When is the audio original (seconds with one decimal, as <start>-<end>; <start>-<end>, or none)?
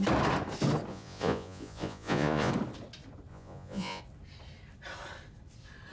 0.0-0.9; 2.5-3.3; 4.0-5.9